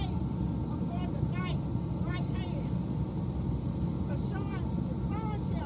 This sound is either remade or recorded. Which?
recorded